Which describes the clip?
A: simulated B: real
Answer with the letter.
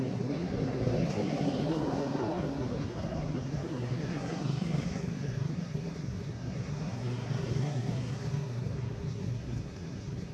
A